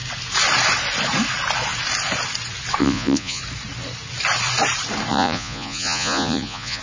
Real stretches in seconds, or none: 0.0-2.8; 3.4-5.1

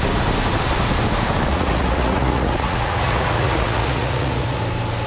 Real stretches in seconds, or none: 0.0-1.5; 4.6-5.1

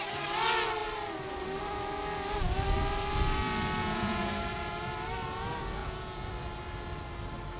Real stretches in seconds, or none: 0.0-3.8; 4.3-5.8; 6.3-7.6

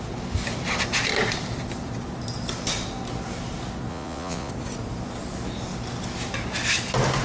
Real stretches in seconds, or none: 0.0-3.9; 4.5-7.2

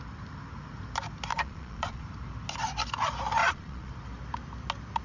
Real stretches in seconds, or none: 0.0-1.3; 2.0-3.4; 3.9-5.0